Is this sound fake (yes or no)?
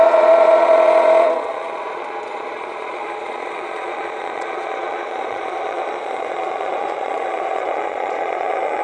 yes